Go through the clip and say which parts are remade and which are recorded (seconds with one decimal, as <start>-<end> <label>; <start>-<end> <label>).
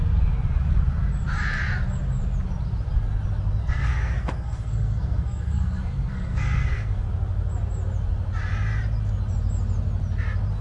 0.0-3.6 recorded; 3.6-7.1 remade; 7.1-10.6 recorded